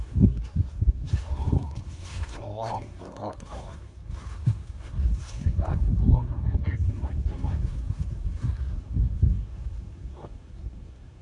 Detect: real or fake fake